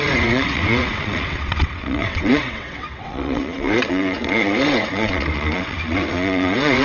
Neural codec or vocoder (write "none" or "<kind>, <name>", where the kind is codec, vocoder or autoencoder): vocoder, WaveNeXt